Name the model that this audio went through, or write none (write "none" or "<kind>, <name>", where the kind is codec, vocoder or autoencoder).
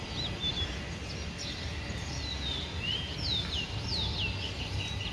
none